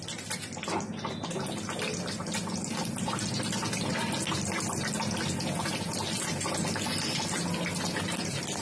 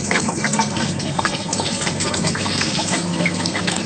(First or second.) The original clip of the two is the first